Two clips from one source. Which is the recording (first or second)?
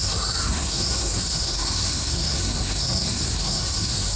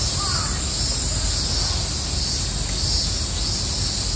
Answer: second